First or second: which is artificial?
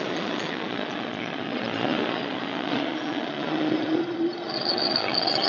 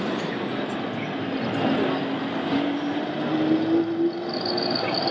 first